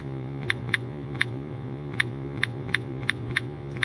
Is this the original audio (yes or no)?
no